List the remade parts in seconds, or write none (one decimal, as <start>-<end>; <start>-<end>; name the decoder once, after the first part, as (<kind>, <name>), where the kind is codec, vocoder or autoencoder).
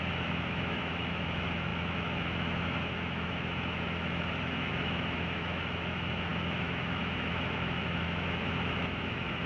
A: 0.0-9.5 (autoencoder, DAC-VAE)